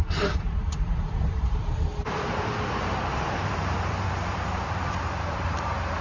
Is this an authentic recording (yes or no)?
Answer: no